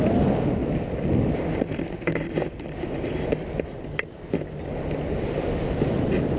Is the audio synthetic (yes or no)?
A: no